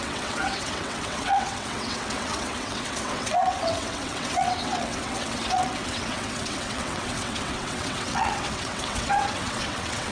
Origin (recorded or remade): remade